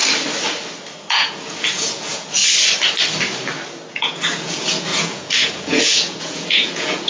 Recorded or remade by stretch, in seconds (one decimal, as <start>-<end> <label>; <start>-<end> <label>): 0.0-1.1 recorded; 1.1-2.4 remade; 2.4-3.9 recorded; 3.9-7.1 remade